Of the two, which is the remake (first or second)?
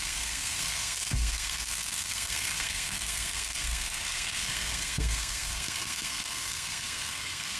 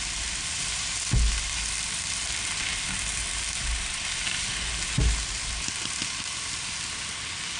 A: first